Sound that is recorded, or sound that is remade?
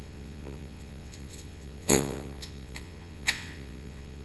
remade